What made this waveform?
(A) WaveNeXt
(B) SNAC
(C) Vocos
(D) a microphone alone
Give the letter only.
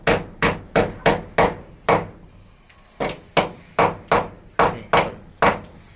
D